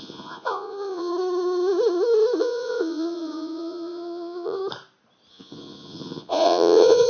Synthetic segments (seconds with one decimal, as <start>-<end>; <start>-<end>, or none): 0.0-1.1; 2.4-4.6; 5.3-7.1

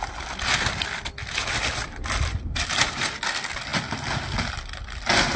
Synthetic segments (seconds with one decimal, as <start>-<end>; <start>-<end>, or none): none

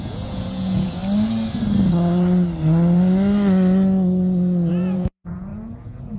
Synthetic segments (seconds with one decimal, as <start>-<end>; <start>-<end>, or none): 0.0-1.0; 4.7-6.2

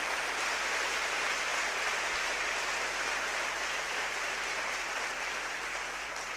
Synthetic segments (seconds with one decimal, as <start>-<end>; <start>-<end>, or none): 0.0-6.4